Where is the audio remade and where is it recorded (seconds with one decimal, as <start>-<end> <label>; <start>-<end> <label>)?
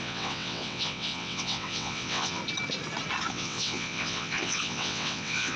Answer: 0.0-2.4 remade; 2.4-3.3 recorded; 3.3-5.6 remade